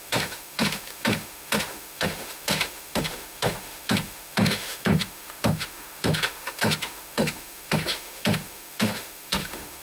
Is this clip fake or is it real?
fake